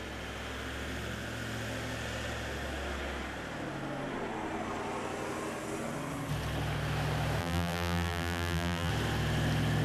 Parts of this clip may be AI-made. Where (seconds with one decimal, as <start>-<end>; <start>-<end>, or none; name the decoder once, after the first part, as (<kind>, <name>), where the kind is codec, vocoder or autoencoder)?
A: 7.4-8.9 (vocoder, BigVGAN v2)